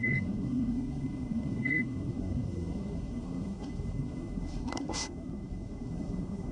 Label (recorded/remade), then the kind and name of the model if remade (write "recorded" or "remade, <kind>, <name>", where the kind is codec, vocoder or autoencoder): remade, codec, SNAC